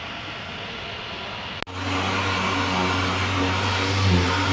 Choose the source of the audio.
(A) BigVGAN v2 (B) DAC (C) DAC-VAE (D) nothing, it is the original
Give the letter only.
D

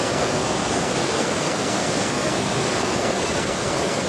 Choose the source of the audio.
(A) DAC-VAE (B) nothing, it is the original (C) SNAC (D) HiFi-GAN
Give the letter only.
C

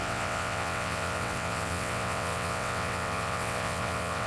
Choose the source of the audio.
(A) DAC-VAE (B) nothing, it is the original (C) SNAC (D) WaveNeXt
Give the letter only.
D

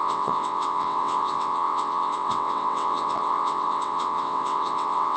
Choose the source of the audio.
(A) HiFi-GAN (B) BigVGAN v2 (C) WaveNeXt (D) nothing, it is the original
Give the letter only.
C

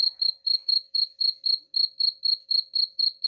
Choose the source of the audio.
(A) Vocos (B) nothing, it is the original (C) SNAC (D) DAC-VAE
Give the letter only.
B